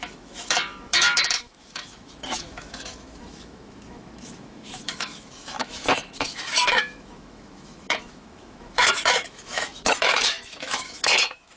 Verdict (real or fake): fake